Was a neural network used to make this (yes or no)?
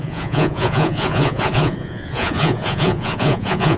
yes